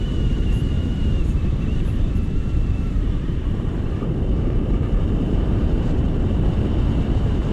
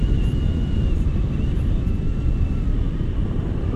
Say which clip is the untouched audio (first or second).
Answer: second